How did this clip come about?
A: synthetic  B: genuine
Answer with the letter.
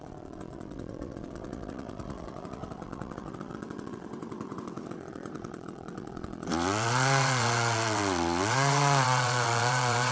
A